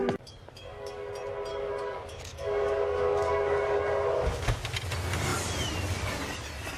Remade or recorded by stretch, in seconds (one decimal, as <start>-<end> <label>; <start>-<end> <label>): 0.0-1.1 remade; 1.1-1.5 recorded; 1.5-4.6 remade; 4.6-6.8 recorded